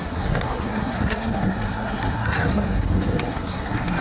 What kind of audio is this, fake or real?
fake